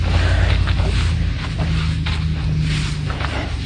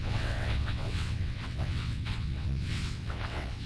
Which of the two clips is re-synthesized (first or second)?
second